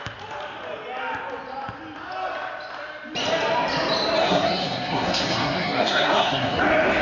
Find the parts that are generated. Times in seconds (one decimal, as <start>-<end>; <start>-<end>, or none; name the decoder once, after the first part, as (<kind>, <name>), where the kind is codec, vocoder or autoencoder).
4.2-6.6 (codec, SNAC)